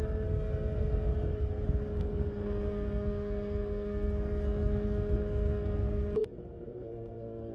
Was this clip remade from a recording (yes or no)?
yes